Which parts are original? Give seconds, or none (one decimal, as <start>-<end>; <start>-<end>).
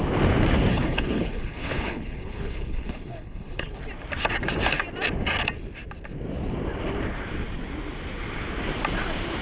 0.0-0.7; 3.8-9.4